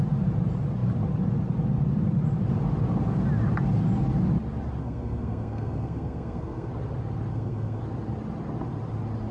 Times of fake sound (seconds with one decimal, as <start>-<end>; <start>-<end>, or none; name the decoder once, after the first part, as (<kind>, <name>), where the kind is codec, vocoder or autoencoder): 4.8-6.7 (codec, SNAC); 7.3-7.8

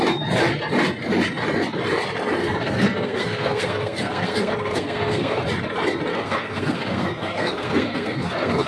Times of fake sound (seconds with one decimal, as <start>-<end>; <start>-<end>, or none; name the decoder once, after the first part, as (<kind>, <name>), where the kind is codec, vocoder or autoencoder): 2.4-5.4 (codec, SNAC); 6.1-8.7

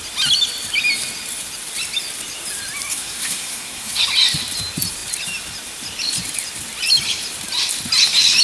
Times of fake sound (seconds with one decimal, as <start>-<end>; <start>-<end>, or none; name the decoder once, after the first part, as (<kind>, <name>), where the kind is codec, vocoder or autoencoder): 2.9-4.0 (codec, SNAC)

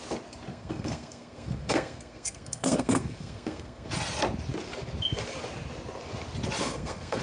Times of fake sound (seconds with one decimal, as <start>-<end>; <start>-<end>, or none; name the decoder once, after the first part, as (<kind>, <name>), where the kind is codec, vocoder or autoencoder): 0.5-3.9 (codec, SNAC); 6.6-7.2

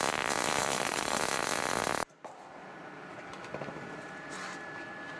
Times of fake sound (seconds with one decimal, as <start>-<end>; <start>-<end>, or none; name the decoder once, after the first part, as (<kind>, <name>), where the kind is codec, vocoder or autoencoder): 0.6-1.2 (codec, SNAC)

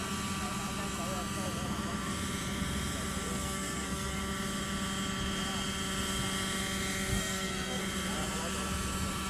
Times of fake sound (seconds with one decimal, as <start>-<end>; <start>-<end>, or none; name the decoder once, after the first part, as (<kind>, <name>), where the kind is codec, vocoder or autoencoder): 3.3-4.2 (codec, SNAC); 7.1-7.8